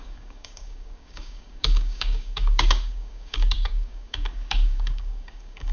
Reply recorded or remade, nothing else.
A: remade